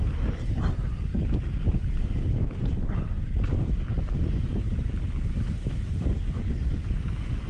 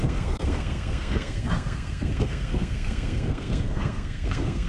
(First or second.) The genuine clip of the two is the first